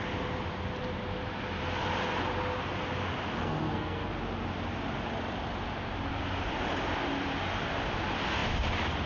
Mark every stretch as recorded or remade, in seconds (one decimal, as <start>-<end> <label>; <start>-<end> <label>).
0.0-3.4 recorded; 3.4-4.1 remade; 4.1-9.1 recorded